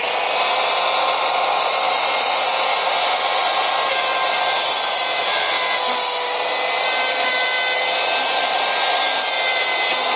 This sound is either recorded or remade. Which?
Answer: recorded